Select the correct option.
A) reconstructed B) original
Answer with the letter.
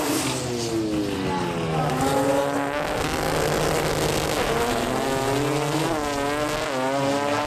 B